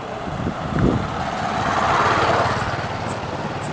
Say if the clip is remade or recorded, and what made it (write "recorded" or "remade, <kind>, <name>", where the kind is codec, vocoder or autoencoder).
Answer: recorded